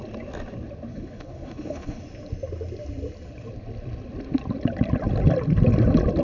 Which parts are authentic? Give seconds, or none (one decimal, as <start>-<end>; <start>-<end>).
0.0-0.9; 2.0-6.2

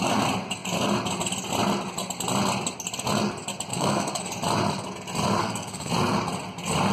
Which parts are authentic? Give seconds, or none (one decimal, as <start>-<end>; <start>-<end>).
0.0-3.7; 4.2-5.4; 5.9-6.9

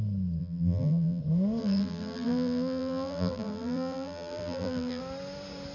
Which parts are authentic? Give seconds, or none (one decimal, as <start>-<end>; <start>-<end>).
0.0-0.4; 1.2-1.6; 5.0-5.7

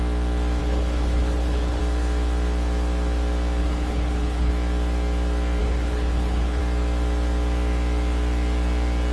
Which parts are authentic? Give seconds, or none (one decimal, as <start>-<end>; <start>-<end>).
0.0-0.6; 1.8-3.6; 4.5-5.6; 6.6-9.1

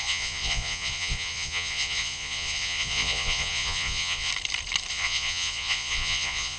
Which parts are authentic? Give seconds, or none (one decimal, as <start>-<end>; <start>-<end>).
4.3-4.9

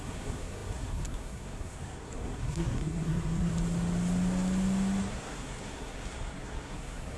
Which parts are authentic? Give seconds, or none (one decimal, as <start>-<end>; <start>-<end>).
3.5-5.0